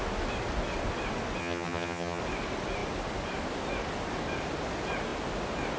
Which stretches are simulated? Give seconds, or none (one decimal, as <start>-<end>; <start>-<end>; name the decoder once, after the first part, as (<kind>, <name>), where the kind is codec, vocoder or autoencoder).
1.4-2.2 (vocoder, HiFi-GAN)